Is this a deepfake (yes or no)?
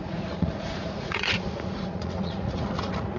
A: yes